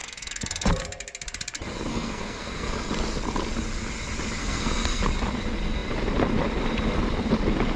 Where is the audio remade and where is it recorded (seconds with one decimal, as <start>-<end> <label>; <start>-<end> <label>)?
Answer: 0.0-0.7 remade; 0.7-1.9 recorded; 1.9-2.9 remade; 2.9-4.4 recorded; 4.4-5.0 remade; 5.0-7.8 recorded

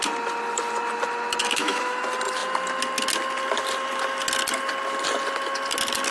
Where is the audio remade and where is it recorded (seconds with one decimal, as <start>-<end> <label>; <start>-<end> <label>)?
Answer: 0.0-1.4 recorded; 1.4-2.0 remade; 2.0-6.1 recorded

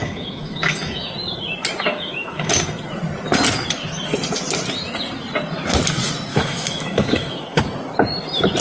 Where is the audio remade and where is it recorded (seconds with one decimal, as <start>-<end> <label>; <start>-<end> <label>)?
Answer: 0.0-1.1 remade; 1.1-1.9 recorded; 1.9-2.5 remade; 2.5-6.3 recorded; 6.3-7.6 remade; 7.6-8.6 recorded

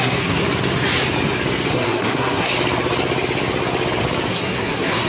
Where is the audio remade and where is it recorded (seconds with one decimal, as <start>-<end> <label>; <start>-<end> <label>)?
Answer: 0.0-0.4 remade; 0.4-1.7 recorded; 1.7-2.5 remade; 2.5-4.3 recorded; 4.3-5.1 remade

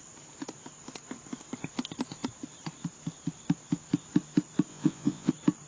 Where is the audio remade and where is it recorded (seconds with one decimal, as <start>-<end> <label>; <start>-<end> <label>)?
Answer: 0.0-4.7 recorded; 4.7-5.3 remade; 5.3-5.7 recorded

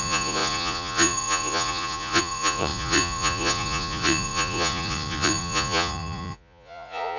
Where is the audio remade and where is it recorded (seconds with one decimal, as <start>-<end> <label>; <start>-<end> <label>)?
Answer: 0.0-7.2 remade